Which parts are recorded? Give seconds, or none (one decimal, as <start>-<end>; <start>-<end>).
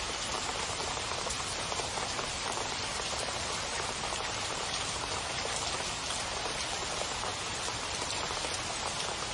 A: 7.3-8.0